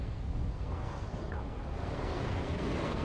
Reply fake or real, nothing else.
fake